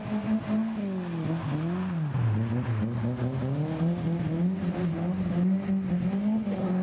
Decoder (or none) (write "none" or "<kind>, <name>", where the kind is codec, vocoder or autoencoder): none